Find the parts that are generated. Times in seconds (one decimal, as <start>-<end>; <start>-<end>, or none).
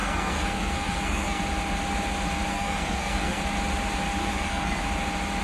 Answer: 0.0-1.4; 2.5-3.4; 4.2-4.8